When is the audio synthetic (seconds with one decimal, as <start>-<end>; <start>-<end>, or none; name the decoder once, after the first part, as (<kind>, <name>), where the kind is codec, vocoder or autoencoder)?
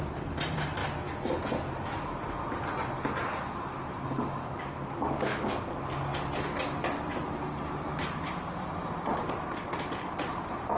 0.0-0.8 (vocoder, BigVGAN v2); 3.9-10.8